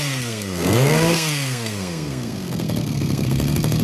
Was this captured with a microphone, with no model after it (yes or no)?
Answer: no